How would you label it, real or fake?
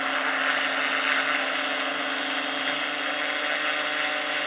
real